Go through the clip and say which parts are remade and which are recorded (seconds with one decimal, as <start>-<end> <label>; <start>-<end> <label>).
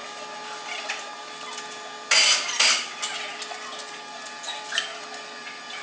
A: 0.0-5.8 recorded